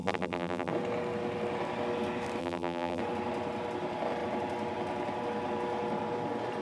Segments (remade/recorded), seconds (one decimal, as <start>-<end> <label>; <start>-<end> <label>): 0.0-0.7 remade; 0.7-2.4 recorded; 2.4-3.0 remade; 3.0-6.6 recorded